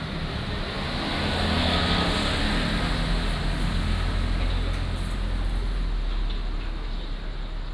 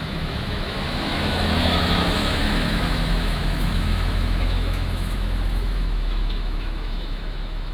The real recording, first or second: first